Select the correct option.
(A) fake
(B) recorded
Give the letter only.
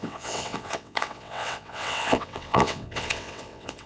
A